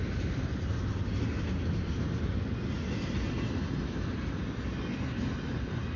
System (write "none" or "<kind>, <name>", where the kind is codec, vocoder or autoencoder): none